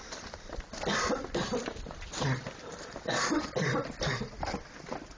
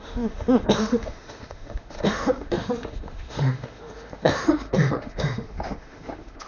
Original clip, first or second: first